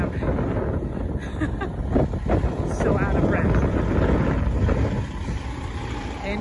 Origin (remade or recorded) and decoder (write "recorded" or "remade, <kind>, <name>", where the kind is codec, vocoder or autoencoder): recorded